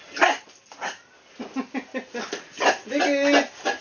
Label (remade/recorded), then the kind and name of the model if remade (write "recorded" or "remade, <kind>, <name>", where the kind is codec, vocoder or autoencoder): recorded